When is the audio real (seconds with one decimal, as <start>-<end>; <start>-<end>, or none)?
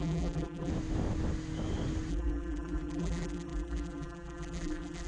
0.7-2.1